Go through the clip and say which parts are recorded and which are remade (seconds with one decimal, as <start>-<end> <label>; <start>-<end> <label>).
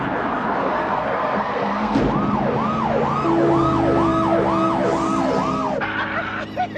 0.0-0.8 recorded; 0.8-2.0 remade; 2.0-6.8 recorded